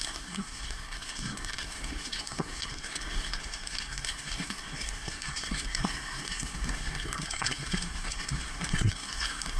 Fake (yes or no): yes